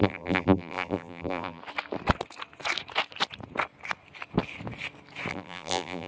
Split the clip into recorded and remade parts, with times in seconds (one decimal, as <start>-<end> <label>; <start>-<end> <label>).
0.0-1.6 remade; 1.6-5.3 recorded; 5.3-6.1 remade